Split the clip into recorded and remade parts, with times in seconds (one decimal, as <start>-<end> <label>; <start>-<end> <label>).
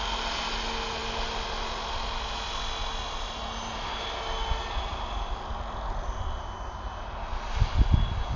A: 0.0-8.4 recorded